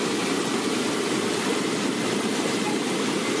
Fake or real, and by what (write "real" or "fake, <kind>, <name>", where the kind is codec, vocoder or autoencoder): real